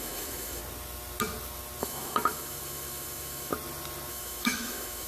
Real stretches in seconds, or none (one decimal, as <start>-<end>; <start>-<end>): 0.6-1.8; 3.5-4.1